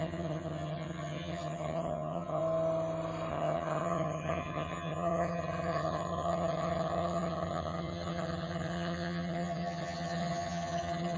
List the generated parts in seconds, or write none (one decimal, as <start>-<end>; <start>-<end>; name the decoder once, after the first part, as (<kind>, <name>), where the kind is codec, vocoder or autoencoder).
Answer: 0.0-2.4 (vocoder, HiFi-GAN); 3.3-11.2